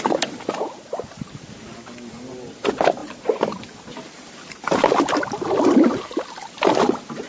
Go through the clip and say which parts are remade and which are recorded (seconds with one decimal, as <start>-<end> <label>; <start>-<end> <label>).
0.0-7.3 recorded